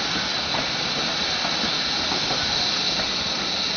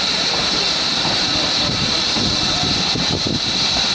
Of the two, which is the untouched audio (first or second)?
first